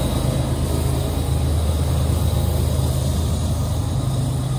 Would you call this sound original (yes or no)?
yes